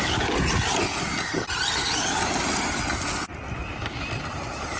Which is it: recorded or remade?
recorded